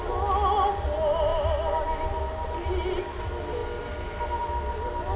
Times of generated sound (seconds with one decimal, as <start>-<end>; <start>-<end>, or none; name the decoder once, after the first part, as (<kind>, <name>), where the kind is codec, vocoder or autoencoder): none